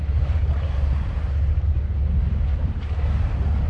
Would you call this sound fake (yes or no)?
no